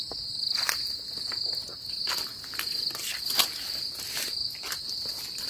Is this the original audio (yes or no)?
yes